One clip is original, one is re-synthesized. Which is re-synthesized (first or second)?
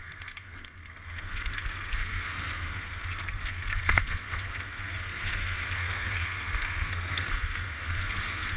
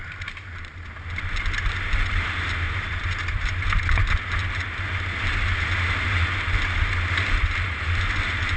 first